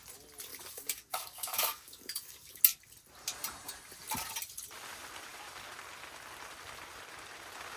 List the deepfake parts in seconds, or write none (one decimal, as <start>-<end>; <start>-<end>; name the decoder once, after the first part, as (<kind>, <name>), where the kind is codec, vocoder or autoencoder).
0.5-2.6 (codec, DAC)